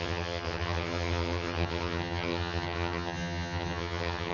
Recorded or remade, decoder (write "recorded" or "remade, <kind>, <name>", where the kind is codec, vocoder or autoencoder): remade, vocoder, HiFi-GAN